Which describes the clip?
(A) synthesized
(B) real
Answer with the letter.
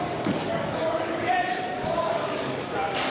A